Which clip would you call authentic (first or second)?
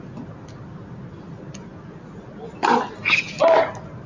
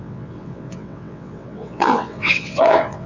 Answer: first